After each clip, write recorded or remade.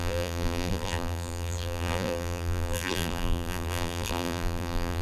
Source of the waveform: remade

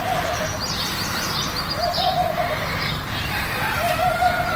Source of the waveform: remade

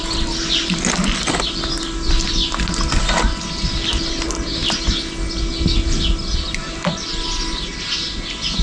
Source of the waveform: recorded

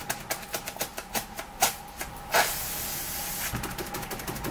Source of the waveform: recorded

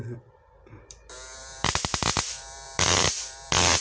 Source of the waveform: remade